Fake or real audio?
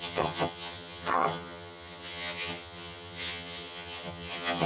fake